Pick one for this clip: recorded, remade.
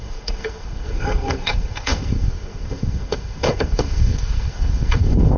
remade